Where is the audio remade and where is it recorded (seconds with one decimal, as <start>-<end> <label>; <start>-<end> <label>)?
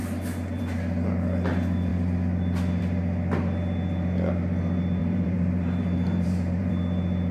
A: 0.0-5.0 recorded; 5.0-6.7 remade; 6.7-7.3 recorded